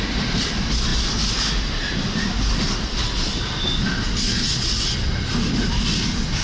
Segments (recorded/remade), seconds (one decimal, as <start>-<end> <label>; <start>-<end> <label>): 0.0-6.4 recorded

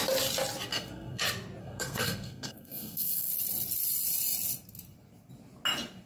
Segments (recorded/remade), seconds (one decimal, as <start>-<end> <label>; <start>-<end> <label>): 0.0-0.7 recorded; 0.7-1.2 remade; 1.2-1.6 recorded; 1.6-3.3 remade; 3.3-6.1 recorded

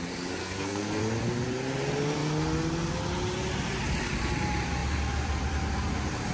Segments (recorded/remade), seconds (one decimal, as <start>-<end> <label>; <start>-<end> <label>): 0.0-0.4 recorded; 0.4-1.0 remade; 1.0-6.3 recorded

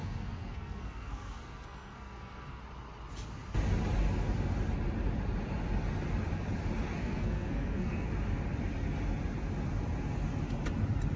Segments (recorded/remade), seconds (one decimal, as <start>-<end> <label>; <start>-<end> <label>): 0.0-2.6 remade; 2.6-7.0 recorded; 7.0-8.1 remade; 8.1-11.2 recorded

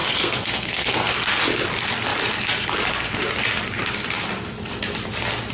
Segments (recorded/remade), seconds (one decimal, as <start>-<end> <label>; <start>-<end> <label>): 0.0-1.1 remade; 1.1-5.5 recorded

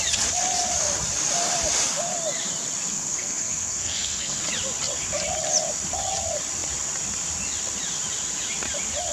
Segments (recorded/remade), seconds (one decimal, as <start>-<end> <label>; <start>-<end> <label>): 0.0-2.9 recorded; 2.9-4.4 remade; 4.4-9.1 recorded